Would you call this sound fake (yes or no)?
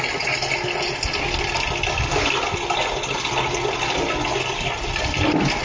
no